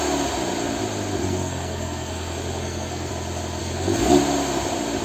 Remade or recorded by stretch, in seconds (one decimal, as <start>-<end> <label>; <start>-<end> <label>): 0.0-1.2 recorded; 1.2-3.1 remade; 3.1-3.6 recorded; 3.6-4.1 remade; 4.1-5.0 recorded